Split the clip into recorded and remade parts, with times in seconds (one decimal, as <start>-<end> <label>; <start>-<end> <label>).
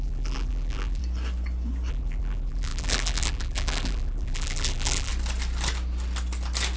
0.0-1.0 remade; 1.0-1.9 recorded; 1.9-5.1 remade; 5.1-6.8 recorded